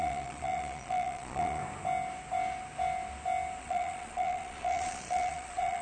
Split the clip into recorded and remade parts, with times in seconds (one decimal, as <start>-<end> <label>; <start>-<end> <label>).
0.0-1.6 remade; 1.6-3.6 recorded; 3.6-5.8 remade